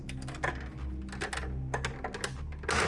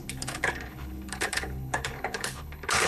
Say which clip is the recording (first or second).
first